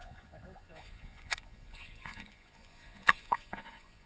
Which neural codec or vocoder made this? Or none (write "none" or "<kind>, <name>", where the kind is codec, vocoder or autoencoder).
vocoder, Vocos